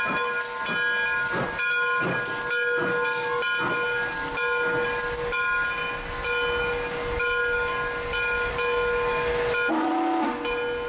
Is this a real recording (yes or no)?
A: yes